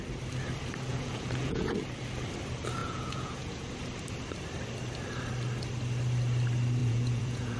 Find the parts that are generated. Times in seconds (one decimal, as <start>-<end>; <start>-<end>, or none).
0.9-1.7; 2.8-3.7; 6.8-7.6